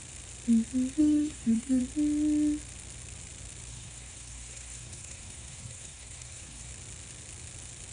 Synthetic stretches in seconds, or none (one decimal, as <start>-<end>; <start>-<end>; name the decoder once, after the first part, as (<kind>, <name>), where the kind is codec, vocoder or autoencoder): 1.0-1.8 (codec, SNAC); 3.7-6.7